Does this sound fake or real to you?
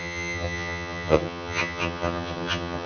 fake